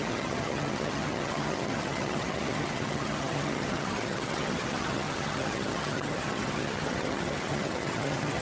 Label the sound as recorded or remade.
remade